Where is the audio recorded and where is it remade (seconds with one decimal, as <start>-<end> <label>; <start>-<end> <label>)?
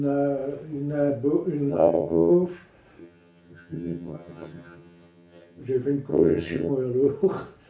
0.0-1.7 recorded; 1.7-2.3 remade; 2.3-3.0 recorded; 3.0-5.6 remade; 5.6-6.1 recorded; 6.1-6.7 remade; 6.7-7.7 recorded